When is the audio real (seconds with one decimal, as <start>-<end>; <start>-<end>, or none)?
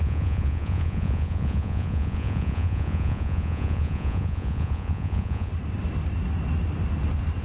5.5-7.4